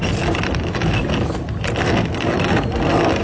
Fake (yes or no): no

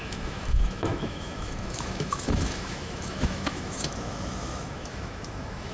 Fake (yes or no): yes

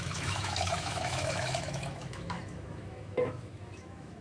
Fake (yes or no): yes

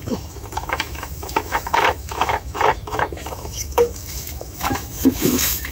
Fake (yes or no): yes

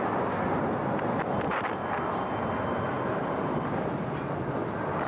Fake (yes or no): no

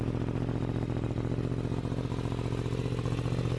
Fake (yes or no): no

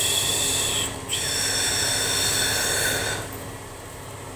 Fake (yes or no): no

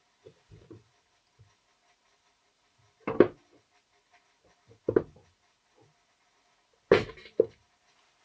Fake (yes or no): no